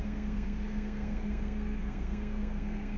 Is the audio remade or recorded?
remade